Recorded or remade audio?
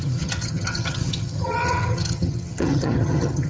remade